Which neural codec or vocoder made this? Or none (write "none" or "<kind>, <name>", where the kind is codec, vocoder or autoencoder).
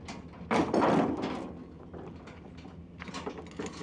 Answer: none